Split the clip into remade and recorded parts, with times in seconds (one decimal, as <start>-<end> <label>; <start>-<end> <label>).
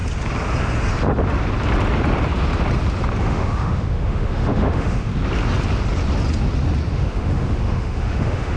0.0-3.2 recorded; 3.2-5.1 remade; 5.1-6.9 recorded; 6.9-8.6 remade